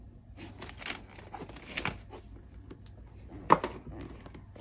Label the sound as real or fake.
real